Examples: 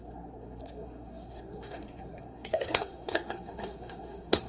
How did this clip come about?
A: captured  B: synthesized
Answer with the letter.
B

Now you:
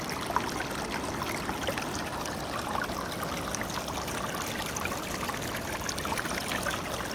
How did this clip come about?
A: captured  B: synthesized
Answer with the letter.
A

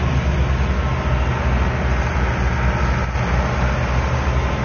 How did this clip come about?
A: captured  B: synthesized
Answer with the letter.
A